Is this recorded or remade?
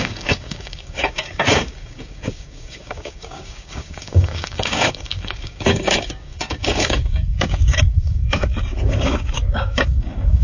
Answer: remade